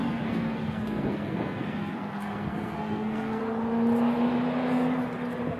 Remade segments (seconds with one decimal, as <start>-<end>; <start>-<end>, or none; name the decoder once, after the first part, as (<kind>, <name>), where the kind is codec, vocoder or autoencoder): 0.0-3.4 (codec, SNAC)